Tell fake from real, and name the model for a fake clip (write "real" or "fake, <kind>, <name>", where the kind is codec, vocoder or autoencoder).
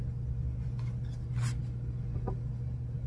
real